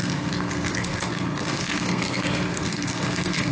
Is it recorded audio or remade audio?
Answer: remade